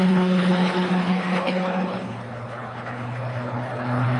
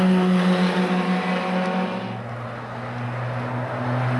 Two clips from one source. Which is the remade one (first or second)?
first